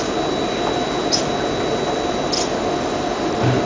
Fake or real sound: real